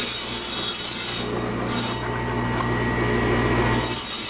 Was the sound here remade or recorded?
recorded